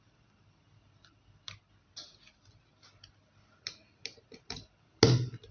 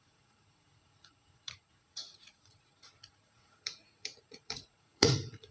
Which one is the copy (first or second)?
second